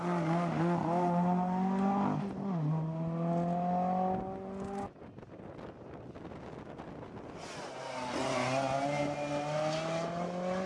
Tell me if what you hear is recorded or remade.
recorded